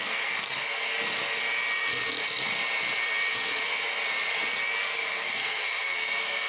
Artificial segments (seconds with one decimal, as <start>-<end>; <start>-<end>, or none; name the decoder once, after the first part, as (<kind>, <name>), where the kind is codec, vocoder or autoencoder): 0.0-0.9 (codec, SNAC); 4.8-6.5